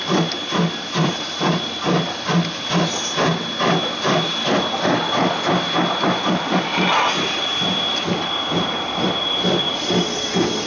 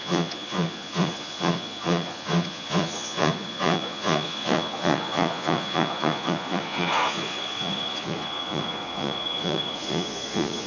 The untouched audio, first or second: first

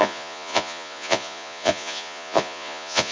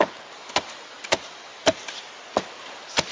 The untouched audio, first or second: second